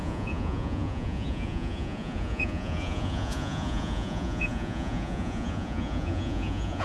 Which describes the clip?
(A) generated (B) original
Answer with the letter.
A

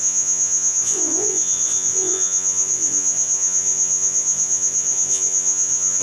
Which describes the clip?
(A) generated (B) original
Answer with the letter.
A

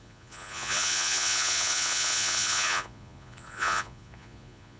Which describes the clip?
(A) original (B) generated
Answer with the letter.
B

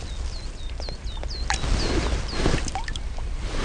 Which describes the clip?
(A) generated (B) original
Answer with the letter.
B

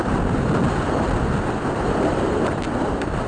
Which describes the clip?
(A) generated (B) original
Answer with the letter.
B